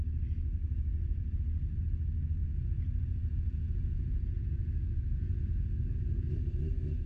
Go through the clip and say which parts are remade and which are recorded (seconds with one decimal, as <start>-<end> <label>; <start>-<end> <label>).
0.0-0.6 recorded; 0.6-1.4 remade; 1.4-2.4 recorded; 2.4-5.4 remade; 5.4-7.1 recorded